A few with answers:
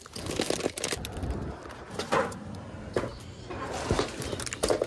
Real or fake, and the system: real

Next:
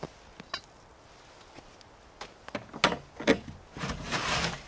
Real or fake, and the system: real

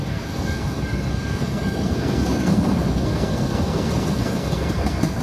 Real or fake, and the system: fake, codec, SNAC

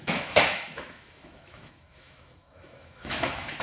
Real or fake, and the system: fake, autoencoder, DAC-VAE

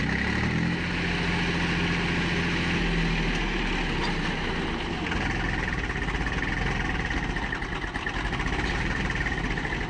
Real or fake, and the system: real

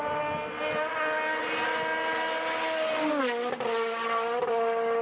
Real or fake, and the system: real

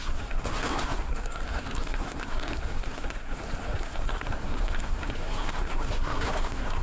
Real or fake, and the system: fake, codec, SNAC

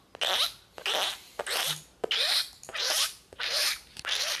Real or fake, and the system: real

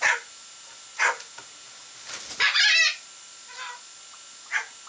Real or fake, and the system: real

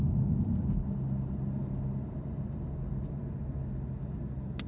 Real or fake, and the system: real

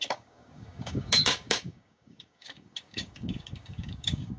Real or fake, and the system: fake, codec, DAC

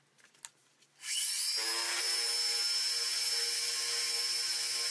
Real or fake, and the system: real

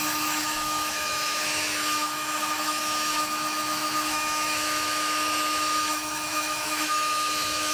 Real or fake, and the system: fake, autoencoder, DAC-VAE